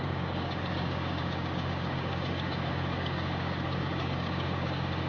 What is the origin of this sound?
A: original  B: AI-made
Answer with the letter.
B